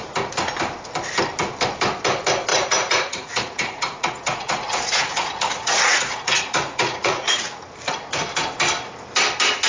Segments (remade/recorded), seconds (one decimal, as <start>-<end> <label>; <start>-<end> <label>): 0.0-2.5 recorded; 2.5-7.6 remade; 7.6-9.7 recorded